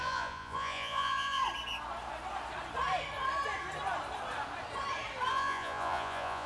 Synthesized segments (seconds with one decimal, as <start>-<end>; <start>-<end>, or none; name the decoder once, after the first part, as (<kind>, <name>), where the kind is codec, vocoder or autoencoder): 0.0-1.4 (vocoder, Vocos); 5.3-6.5